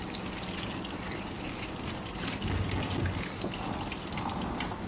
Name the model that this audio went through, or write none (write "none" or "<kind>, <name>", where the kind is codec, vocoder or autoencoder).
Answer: none